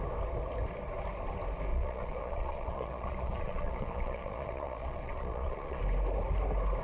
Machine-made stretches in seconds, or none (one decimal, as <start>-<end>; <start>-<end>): 1.7-5.8